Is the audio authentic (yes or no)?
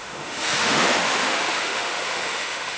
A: no